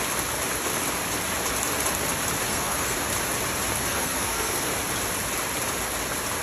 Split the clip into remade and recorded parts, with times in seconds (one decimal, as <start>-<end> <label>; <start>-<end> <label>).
0.0-2.5 recorded; 2.5-3.1 remade; 3.1-3.9 recorded; 3.9-4.7 remade; 4.7-6.4 recorded